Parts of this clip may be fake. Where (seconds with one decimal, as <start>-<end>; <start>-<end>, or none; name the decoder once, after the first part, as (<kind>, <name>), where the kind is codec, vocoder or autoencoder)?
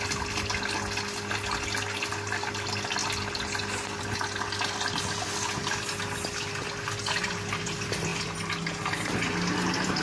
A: none